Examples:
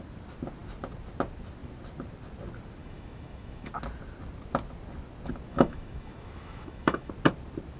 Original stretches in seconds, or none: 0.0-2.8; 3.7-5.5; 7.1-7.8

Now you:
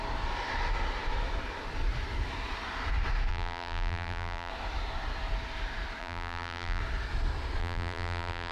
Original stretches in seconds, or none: 0.0-3.3; 4.5-6.0; 6.8-7.6

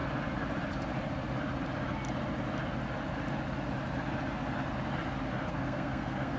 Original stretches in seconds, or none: 0.0-5.5

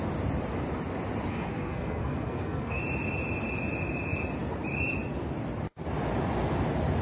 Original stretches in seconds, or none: 0.0-1.3; 2.8-7.0

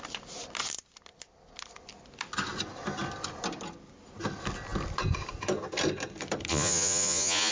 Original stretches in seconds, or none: 0.0-6.5